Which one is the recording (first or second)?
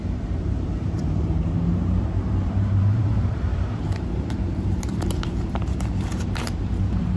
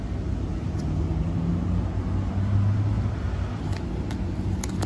second